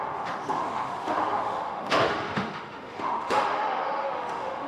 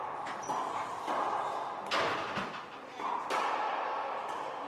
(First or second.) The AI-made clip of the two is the first